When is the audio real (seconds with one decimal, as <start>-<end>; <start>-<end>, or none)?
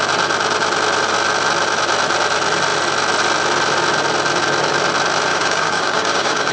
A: 0.0-5.3